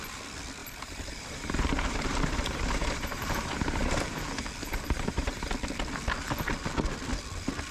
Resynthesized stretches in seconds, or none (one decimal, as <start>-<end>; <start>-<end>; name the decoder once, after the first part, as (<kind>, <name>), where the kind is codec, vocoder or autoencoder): 0.6-4.0 (vocoder, BigVGAN v2); 4.6-5.5